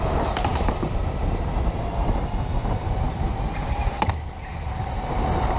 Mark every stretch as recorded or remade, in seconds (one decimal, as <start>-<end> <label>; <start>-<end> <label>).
0.0-0.5 recorded; 0.5-2.1 remade; 2.1-2.6 recorded; 2.6-4.1 remade; 4.1-5.6 recorded